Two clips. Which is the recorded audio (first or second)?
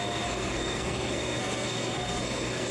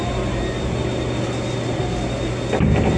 second